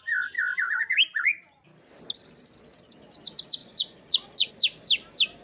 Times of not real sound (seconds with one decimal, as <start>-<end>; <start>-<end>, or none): 3.6-4.5